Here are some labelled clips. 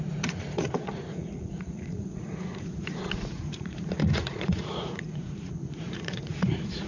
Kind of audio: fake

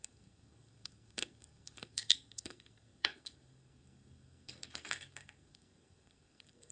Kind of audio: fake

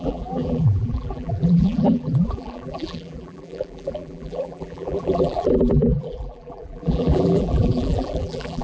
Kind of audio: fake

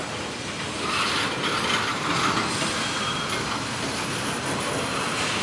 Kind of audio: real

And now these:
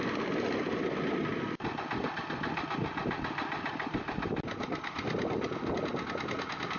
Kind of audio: real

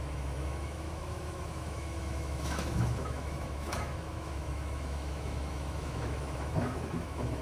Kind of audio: fake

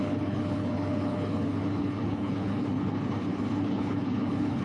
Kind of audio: fake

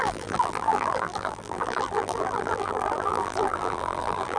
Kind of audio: fake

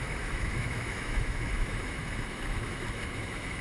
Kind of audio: fake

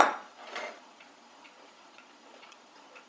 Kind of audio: fake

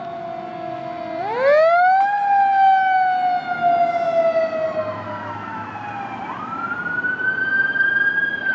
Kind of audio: real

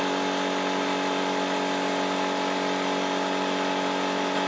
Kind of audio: real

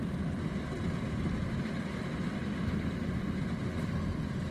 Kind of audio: real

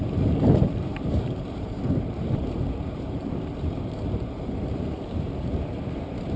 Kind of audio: fake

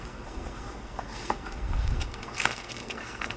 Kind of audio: fake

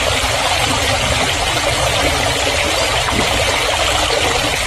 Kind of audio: real